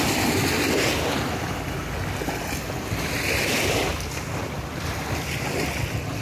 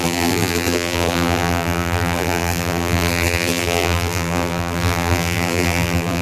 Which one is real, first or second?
first